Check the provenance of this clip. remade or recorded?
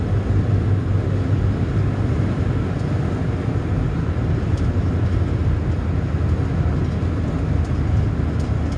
recorded